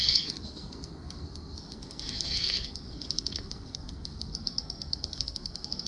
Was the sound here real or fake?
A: fake